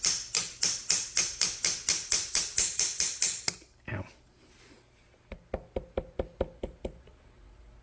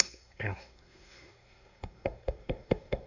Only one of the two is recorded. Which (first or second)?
first